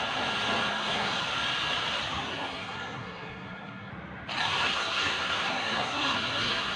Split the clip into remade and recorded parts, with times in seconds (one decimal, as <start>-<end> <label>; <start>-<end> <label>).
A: 0.0-0.7 recorded; 0.7-1.2 remade; 1.2-2.3 recorded; 2.3-3.9 remade; 3.9-4.4 recorded; 4.4-6.8 remade